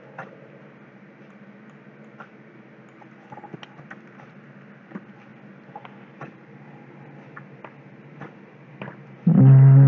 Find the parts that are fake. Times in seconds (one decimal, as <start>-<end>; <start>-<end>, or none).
none